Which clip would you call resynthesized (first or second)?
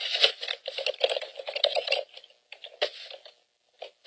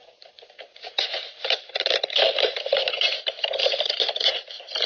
second